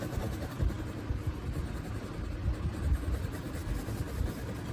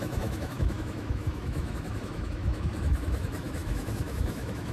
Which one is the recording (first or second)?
first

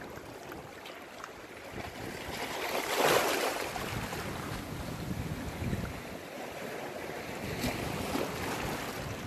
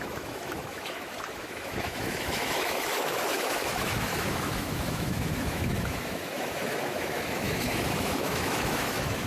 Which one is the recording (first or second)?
first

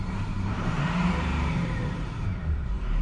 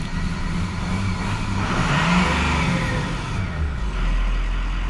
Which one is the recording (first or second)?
second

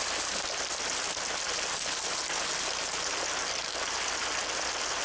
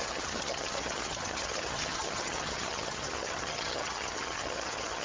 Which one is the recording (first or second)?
first